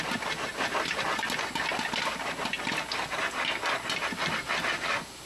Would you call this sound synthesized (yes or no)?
no